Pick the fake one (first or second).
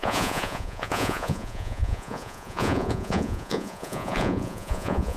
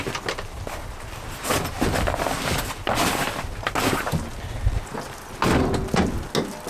first